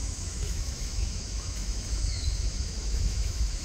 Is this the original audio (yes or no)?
no